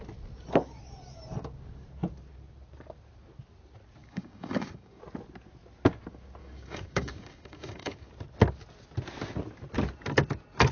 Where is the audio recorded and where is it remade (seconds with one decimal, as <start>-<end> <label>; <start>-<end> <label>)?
0.0-4.0 recorded; 4.0-5.0 remade; 5.0-6.4 recorded; 6.4-8.1 remade; 8.1-10.7 recorded